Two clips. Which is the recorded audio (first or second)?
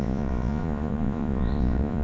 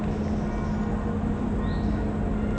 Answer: second